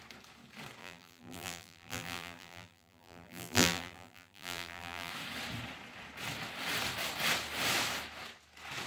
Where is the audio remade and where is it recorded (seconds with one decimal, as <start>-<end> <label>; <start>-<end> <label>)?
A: 0.0-0.8 recorded; 0.8-5.1 remade; 5.1-8.9 recorded